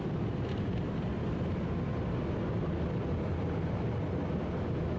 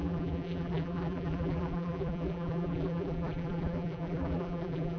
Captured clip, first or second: first